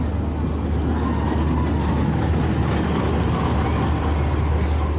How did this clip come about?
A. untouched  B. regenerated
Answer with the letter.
A